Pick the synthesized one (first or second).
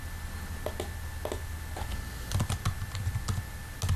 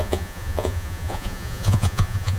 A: second